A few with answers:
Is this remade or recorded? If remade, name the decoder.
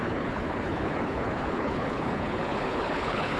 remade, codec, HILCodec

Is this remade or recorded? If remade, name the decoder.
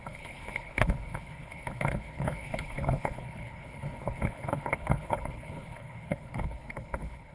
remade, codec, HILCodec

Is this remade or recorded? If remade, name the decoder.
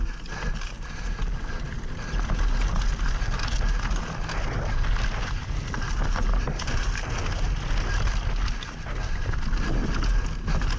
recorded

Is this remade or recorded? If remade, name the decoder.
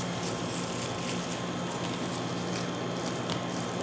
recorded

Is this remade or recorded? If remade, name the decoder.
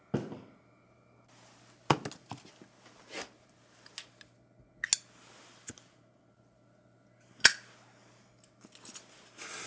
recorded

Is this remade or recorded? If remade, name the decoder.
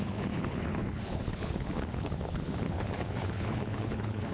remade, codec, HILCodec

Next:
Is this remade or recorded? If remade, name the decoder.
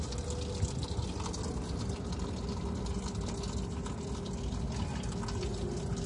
recorded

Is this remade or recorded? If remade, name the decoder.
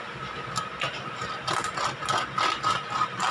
recorded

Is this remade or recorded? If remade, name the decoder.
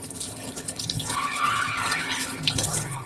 remade, codec, HILCodec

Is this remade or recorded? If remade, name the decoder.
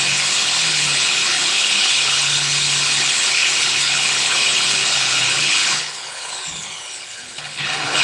remade, codec, HILCodec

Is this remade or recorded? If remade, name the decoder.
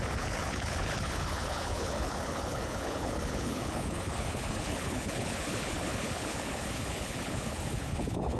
remade, codec, HILCodec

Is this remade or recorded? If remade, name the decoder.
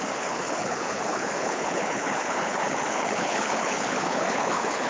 remade, codec, HILCodec